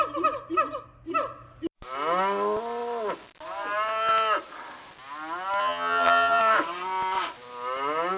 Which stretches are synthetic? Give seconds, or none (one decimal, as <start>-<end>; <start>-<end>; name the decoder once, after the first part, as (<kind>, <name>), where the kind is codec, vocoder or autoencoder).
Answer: 5.6-6.4 (vocoder, HiFi-GAN)